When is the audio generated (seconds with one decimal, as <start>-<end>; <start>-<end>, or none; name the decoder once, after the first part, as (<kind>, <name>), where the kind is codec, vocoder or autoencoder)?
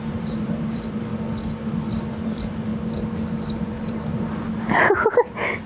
0.0-1.1 (vocoder, BigVGAN v2); 2.0-2.7; 3.6-5.7